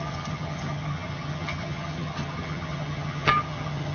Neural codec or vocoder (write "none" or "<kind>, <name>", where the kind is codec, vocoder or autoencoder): vocoder, HiFi-GAN